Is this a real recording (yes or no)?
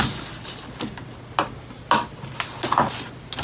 yes